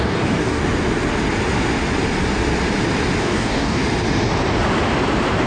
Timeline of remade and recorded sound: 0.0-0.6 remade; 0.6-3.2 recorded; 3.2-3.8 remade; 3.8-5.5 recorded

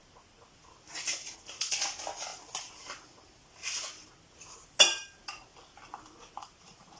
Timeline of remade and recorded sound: 0.0-7.0 recorded

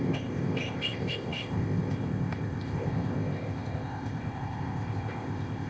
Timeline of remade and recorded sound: 0.0-5.7 remade